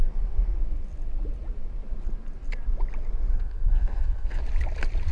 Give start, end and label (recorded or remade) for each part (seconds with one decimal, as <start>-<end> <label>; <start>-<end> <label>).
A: 0.0-3.3 recorded; 3.3-4.4 remade; 4.4-5.1 recorded